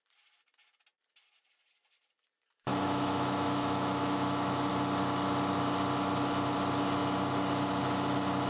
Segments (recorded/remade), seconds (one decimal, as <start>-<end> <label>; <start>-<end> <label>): 0.0-2.7 recorded; 2.7-4.7 remade; 4.7-8.5 recorded